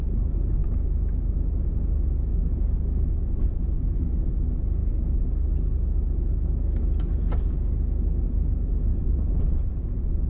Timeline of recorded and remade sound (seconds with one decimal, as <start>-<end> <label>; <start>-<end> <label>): 0.0-0.6 recorded; 0.6-1.7 remade; 1.7-2.3 recorded; 2.3-3.2 remade; 3.2-10.3 recorded